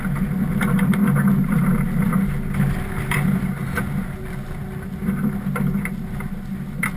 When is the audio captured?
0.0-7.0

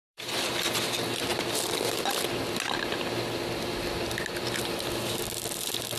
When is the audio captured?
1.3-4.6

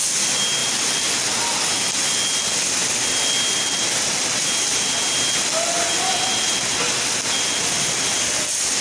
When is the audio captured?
0.0-8.8

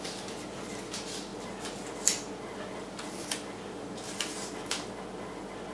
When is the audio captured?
0.0-5.7